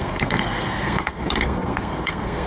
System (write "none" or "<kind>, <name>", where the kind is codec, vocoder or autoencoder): codec, SNAC